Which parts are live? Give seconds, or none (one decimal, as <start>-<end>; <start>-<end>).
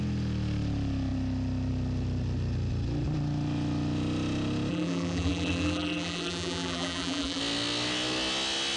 0.0-4.7; 7.4-8.8